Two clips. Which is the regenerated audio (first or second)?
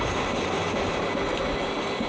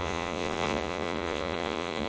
second